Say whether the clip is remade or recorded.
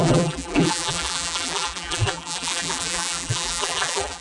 remade